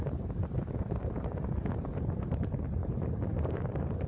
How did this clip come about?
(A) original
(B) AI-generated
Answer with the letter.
A